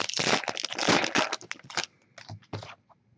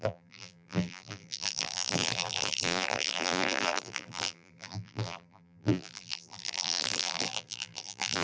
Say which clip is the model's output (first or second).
second